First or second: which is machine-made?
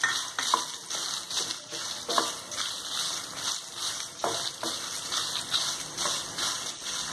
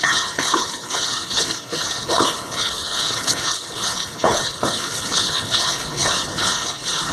second